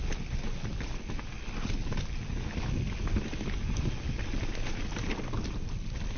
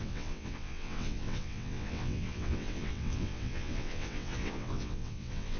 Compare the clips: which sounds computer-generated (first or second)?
second